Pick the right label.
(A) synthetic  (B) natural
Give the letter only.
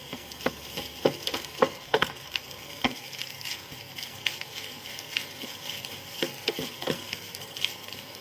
A